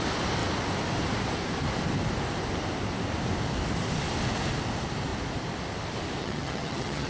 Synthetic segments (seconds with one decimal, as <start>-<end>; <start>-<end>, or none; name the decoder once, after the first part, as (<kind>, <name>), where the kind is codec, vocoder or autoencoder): 6.2-7.1 (vocoder, HiFi-GAN)